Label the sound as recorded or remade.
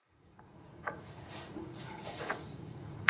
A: remade